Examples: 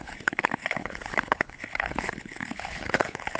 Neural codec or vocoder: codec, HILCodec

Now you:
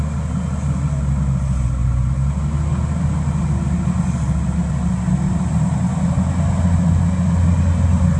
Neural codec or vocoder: none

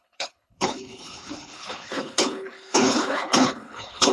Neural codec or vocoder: codec, HILCodec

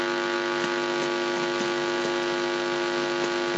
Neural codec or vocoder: none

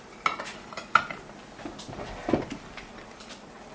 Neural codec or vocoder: none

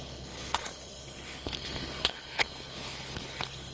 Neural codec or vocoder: codec, HILCodec